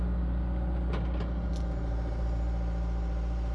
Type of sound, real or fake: real